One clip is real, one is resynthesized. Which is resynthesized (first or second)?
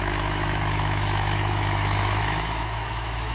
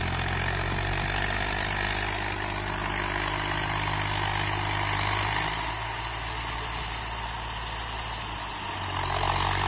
first